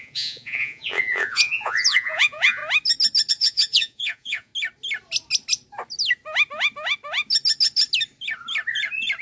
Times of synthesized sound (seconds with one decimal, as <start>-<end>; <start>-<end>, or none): 0.0-2.6; 3.3-4.5